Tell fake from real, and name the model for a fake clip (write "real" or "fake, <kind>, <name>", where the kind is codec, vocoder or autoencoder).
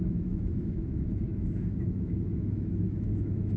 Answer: fake, autoencoder, DAC-VAE